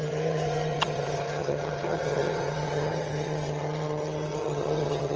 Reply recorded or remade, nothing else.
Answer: remade